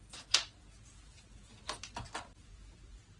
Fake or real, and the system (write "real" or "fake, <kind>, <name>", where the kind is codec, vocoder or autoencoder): real